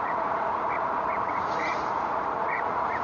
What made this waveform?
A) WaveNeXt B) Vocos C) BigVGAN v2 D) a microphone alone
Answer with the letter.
B